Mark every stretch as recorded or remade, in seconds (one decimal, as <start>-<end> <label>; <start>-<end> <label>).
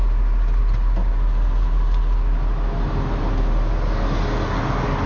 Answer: 0.0-5.1 recorded